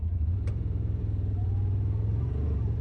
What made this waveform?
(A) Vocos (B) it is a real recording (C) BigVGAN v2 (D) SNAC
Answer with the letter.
C